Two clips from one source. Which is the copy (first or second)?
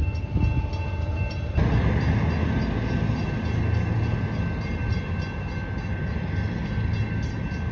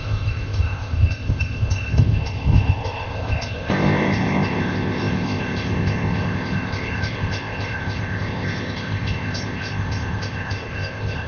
second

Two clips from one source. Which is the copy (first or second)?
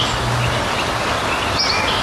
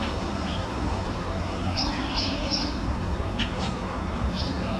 second